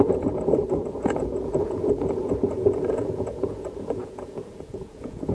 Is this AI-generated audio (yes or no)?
yes